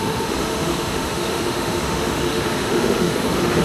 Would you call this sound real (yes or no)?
no